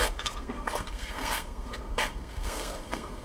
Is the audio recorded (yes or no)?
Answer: no